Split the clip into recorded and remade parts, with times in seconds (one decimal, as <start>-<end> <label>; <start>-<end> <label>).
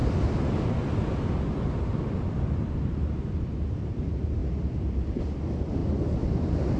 0.0-6.8 recorded